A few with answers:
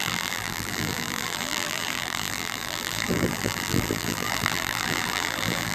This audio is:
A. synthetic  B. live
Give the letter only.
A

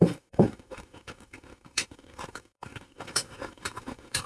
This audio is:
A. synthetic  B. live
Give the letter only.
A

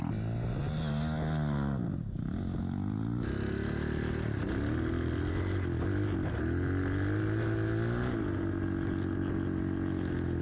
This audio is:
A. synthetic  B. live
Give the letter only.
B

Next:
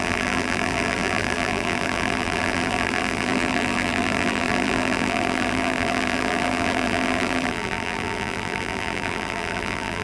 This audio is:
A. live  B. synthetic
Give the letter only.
B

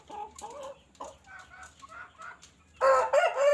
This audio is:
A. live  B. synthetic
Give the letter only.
A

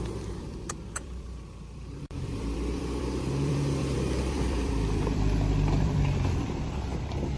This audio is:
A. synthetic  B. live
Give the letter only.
A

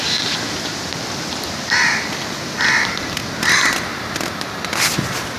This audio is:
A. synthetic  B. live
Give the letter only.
B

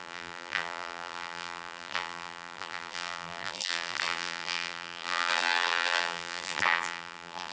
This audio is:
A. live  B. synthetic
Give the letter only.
B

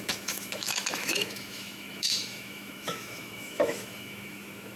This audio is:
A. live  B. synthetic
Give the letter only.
B